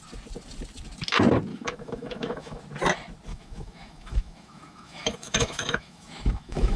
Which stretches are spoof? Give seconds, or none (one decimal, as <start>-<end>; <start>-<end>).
1.5-2.6; 3.3-6.8